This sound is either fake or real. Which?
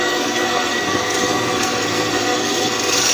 fake